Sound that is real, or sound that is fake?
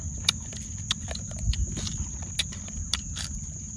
real